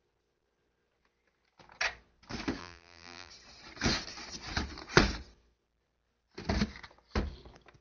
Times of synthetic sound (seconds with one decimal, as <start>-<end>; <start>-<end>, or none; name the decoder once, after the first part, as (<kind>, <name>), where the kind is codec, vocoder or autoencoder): 2.6-3.3 (vocoder, BigVGAN v2)